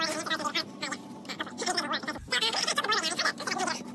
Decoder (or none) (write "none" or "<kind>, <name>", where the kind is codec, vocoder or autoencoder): none